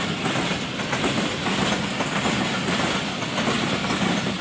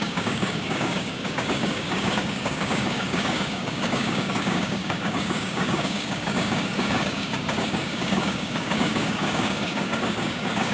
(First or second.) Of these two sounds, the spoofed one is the second